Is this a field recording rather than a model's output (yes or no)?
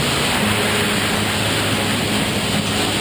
yes